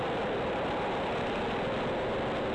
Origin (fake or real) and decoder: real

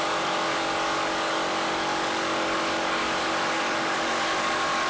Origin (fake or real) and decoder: fake, codec, DAC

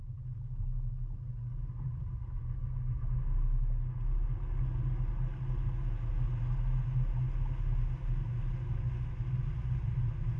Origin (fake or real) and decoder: real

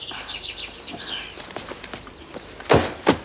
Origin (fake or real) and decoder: real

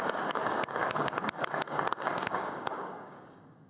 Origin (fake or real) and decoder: fake, codec, DAC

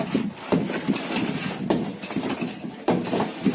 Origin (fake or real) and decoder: real